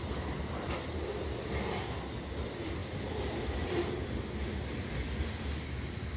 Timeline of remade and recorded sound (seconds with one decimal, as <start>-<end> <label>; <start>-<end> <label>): 0.0-6.2 recorded